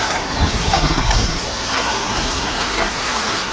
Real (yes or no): no